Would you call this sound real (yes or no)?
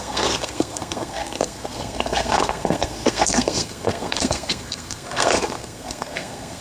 no